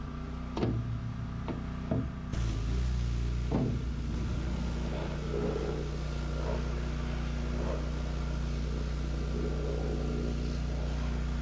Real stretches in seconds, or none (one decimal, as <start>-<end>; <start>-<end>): 0.0-11.4